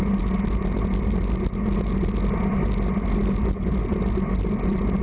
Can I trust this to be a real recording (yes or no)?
yes